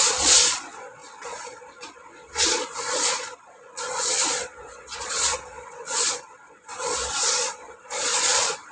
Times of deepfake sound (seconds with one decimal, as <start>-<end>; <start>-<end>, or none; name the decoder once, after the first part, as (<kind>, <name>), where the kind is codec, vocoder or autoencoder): 0.0-8.7 (vocoder, Vocos)